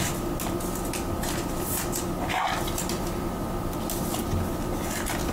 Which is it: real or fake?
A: real